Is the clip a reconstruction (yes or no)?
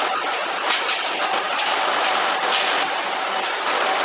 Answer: no